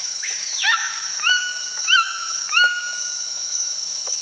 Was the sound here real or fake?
fake